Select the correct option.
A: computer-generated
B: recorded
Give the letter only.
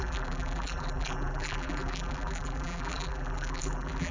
A